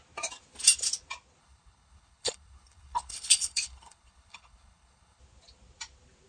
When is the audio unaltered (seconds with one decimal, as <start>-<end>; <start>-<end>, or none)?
0.0-1.4; 5.2-6.3